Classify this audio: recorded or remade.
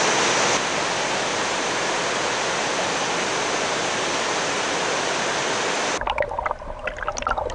recorded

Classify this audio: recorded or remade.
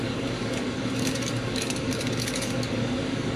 remade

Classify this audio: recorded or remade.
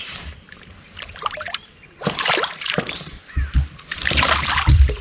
recorded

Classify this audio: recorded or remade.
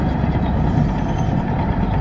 recorded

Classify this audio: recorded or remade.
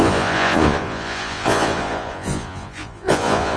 remade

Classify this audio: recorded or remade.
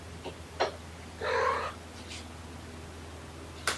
recorded